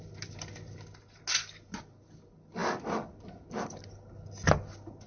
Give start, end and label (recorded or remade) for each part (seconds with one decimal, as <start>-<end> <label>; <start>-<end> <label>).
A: 0.0-5.1 recorded